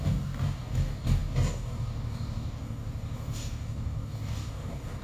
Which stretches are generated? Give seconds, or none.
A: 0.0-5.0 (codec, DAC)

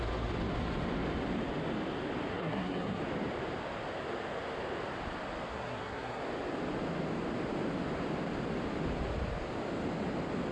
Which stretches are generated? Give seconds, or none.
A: 2.3-3.0 (codec, SNAC); 5.5-6.2